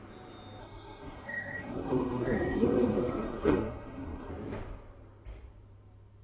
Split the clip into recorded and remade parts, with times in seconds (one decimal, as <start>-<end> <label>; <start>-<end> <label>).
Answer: 0.0-0.6 recorded; 0.6-4.3 remade; 4.3-6.2 recorded